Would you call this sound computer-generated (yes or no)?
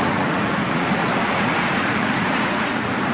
yes